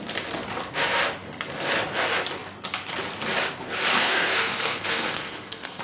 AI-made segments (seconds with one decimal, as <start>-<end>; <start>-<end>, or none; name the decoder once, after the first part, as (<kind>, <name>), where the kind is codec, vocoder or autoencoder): 3.9-5.8 (codec, SNAC)